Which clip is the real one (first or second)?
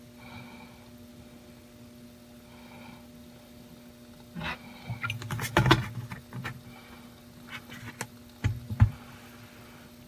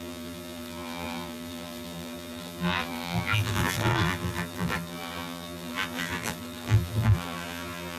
first